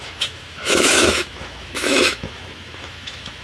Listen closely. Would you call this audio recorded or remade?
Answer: remade